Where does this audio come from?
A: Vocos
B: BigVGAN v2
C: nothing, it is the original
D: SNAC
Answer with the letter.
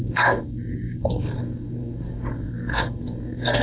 D